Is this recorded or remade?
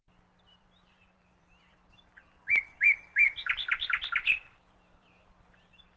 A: remade